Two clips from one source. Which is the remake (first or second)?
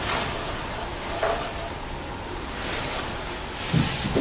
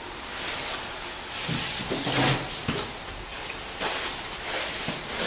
first